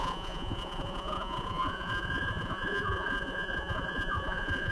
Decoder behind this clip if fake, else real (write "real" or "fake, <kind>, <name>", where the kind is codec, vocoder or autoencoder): fake, vocoder, Vocos